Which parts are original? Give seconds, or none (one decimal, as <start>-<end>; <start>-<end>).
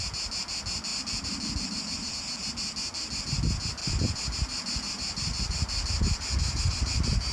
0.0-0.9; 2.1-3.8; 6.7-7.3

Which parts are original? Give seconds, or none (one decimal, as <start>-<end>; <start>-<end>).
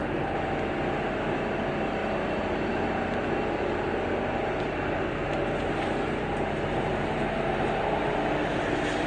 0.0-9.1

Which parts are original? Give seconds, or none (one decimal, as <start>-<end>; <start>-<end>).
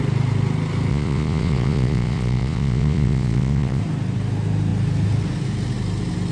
0.0-0.9; 3.8-6.3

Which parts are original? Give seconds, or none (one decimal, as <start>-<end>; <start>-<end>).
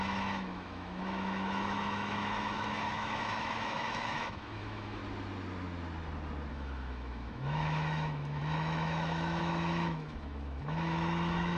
5.0-6.5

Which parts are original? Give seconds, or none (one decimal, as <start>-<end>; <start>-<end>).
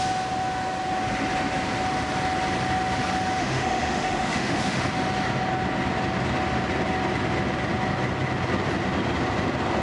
0.0-3.4; 4.8-9.8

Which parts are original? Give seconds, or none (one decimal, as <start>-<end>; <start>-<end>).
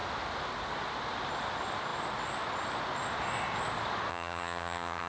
0.0-4.1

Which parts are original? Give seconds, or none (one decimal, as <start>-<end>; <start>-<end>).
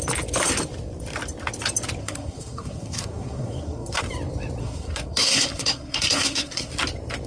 0.0-2.0; 4.0-4.6; 6.7-7.3